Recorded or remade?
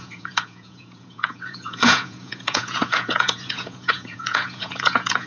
remade